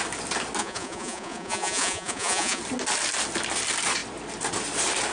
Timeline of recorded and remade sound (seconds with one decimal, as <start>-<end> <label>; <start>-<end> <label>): 0.0-0.6 recorded; 0.6-2.6 remade; 2.6-5.1 recorded

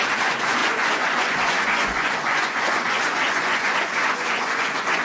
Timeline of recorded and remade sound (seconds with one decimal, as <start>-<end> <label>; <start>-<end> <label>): 0.0-5.0 remade

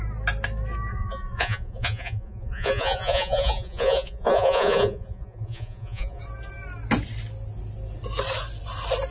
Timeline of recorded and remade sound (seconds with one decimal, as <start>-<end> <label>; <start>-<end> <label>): 0.0-0.9 recorded; 0.9-6.2 remade; 6.2-9.1 recorded

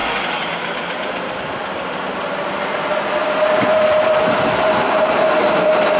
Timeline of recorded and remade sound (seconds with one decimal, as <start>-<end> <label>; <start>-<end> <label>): 0.0-6.0 recorded